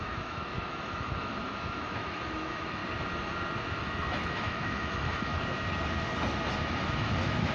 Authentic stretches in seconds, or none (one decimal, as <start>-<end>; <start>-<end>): 2.8-3.6; 5.3-6.6